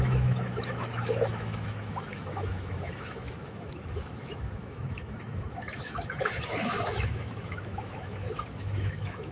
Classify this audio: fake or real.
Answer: fake